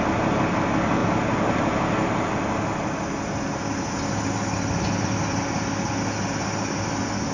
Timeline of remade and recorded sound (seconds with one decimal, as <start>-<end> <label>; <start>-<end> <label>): 0.0-7.3 recorded